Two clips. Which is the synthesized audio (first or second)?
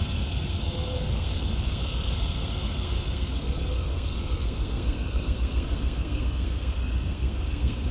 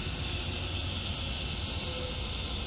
first